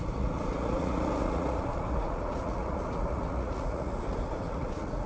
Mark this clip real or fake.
fake